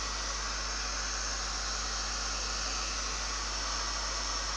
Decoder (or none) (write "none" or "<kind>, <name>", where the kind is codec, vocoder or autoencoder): none